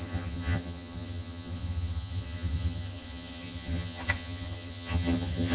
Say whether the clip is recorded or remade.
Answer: remade